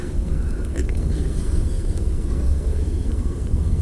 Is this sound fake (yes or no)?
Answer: yes